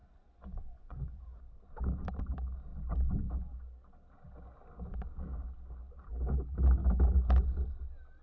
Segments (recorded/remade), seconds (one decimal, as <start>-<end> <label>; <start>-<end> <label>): 0.0-1.4 remade; 1.4-8.2 recorded